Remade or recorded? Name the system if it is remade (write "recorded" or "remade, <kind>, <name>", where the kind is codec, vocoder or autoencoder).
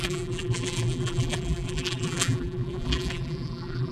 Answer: remade, vocoder, BigVGAN v2